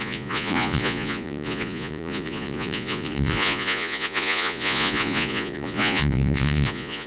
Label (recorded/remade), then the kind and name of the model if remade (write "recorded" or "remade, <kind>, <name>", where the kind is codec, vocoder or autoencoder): remade, vocoder, Vocos